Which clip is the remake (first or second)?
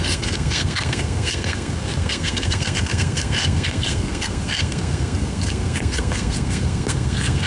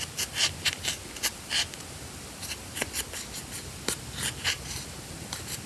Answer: first